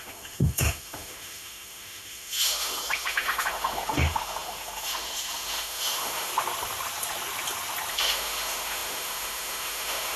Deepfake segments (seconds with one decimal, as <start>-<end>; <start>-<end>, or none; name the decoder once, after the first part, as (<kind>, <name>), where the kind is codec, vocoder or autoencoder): 0.0-6.3 (autoencoder, DAC-VAE); 7.9-10.2